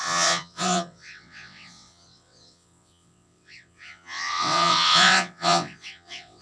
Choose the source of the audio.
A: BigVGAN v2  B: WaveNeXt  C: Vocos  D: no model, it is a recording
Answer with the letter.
B